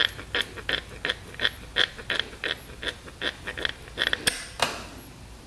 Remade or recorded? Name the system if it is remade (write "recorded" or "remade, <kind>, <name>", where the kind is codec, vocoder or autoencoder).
recorded